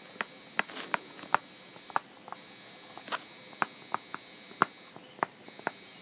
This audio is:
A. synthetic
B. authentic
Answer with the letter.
B